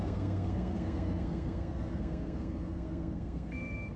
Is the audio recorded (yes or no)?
no